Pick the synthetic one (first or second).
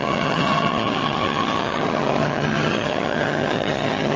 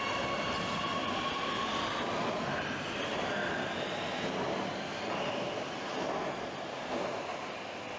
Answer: first